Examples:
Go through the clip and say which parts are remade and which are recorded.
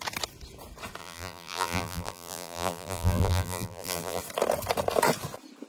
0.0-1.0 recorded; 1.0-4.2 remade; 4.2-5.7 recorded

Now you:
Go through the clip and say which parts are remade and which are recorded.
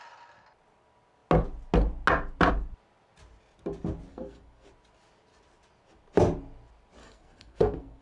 0.0-4.1 recorded; 4.1-4.7 remade; 4.7-7.0 recorded; 7.0-8.0 remade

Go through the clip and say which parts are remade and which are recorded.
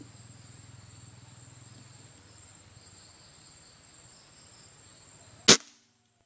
0.0-6.3 recorded